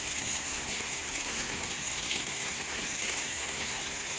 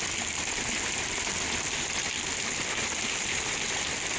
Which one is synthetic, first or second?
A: first